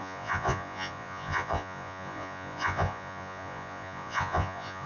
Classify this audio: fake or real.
fake